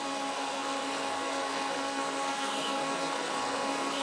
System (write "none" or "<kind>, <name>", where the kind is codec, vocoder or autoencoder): codec, SNAC